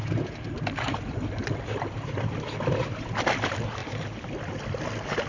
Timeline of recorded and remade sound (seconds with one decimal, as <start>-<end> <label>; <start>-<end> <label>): 0.0-5.3 recorded